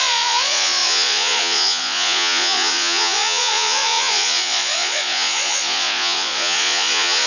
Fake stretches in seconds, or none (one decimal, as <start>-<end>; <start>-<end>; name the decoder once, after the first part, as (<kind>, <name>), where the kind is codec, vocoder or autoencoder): 0.0-7.3 (vocoder, Vocos)